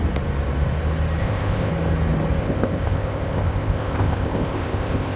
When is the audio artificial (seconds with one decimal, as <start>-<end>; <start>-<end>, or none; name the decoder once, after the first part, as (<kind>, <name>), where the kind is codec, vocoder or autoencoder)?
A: 1.2-1.7 (codec, ZipCodec); 2.4-5.2